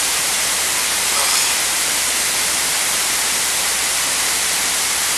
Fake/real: fake